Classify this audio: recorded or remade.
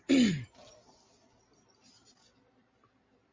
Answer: recorded